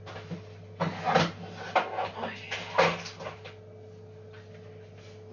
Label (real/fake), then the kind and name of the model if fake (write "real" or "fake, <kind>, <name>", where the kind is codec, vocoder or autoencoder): real